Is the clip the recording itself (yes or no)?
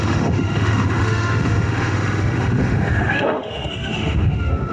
no